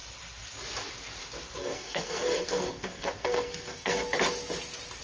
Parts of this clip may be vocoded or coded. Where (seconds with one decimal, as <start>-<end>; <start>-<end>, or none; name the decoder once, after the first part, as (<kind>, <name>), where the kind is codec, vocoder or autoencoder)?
1.6-4.0 (codec, SNAC)